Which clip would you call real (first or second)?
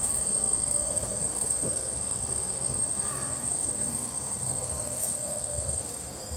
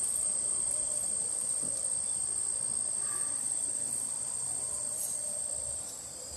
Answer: second